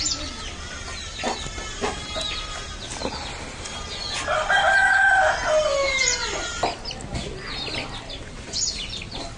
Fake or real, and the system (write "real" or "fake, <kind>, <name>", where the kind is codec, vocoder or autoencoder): real